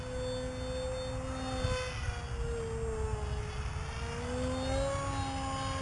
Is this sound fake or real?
real